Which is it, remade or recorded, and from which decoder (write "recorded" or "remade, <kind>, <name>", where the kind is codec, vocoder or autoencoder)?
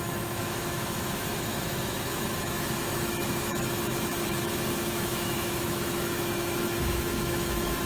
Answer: remade, autoencoder, DAC-VAE